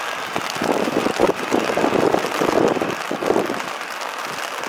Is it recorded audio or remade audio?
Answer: recorded